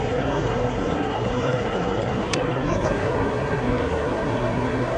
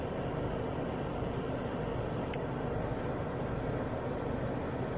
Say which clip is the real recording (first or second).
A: second